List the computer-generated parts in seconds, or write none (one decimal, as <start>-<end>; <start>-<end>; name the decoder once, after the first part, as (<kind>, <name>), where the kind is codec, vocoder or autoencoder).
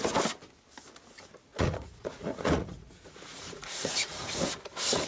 1.5-4.6 (vocoder, Vocos)